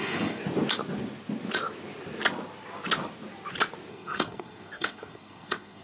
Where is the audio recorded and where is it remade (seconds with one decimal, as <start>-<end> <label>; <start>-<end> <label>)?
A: 0.0-0.4 remade; 0.4-3.9 recorded; 3.9-5.8 remade